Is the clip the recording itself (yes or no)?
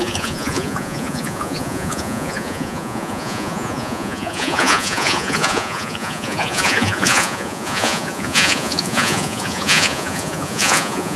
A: no